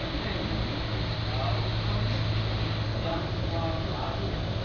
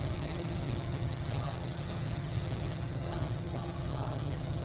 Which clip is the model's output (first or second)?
second